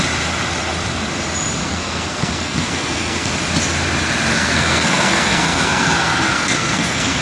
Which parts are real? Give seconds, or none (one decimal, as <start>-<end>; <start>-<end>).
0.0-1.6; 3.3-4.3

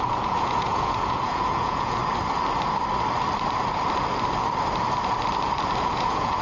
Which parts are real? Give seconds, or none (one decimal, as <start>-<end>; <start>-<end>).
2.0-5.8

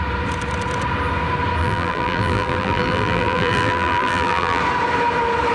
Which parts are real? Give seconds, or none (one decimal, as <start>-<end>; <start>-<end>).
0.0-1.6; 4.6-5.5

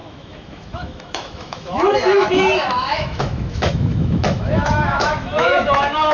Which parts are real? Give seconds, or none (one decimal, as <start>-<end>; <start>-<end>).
none

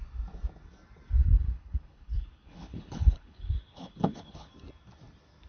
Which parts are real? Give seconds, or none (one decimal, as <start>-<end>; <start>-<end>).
0.0-1.2; 4.5-5.5

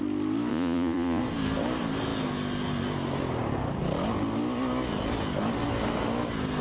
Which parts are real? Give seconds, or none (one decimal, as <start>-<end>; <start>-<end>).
0.0-0.5; 1.2-6.6

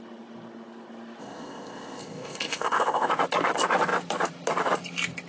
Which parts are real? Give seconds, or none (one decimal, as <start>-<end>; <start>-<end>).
0.0-1.2; 3.1-5.3

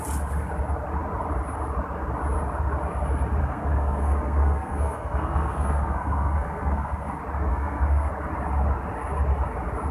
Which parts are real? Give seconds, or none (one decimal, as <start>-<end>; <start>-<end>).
0.0-3.4; 7.1-7.5; 8.1-9.9